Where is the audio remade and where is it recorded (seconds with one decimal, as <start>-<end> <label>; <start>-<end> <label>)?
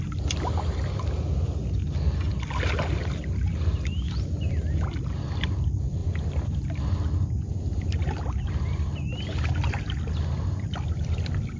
0.0-11.6 recorded